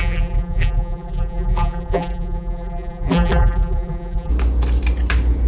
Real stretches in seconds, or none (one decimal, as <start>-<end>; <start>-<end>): 4.3-5.5